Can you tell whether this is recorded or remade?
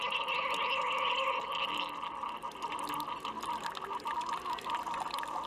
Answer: recorded